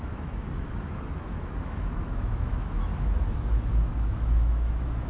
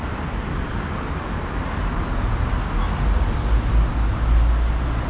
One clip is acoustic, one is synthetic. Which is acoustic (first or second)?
second